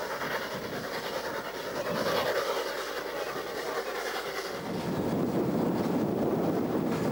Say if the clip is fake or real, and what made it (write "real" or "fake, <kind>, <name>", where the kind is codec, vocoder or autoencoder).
real